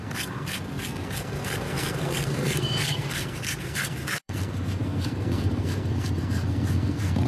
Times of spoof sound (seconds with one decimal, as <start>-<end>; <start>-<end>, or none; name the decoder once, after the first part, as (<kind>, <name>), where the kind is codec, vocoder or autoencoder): 0.0-7.3 (codec, SNAC)